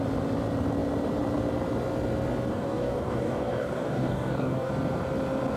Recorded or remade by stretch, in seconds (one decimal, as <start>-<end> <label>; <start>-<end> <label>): 0.0-2.5 recorded; 2.5-4.7 remade; 4.7-5.6 recorded